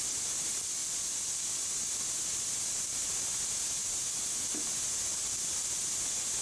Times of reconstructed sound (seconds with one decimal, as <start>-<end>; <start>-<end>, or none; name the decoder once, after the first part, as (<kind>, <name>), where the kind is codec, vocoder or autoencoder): none